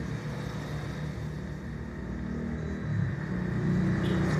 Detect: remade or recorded recorded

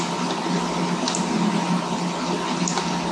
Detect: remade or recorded recorded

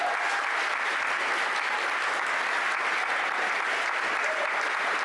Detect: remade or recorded recorded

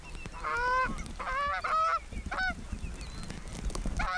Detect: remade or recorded recorded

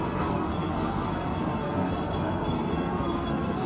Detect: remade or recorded remade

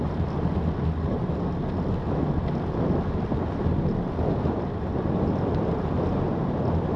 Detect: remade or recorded recorded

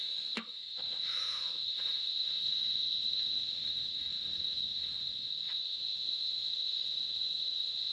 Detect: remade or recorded remade